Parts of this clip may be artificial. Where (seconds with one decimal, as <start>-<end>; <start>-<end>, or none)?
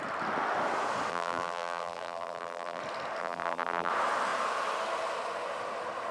1.1-2.8; 3.2-3.9